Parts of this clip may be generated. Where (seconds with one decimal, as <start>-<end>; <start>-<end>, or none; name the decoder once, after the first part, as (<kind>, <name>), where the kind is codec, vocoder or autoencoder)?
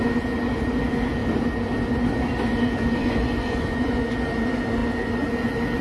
3.0-4.0 (vocoder, Vocos)